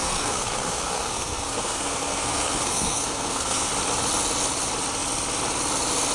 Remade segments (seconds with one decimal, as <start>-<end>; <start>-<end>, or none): 0.0-3.7